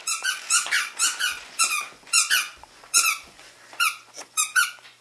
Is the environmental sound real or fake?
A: fake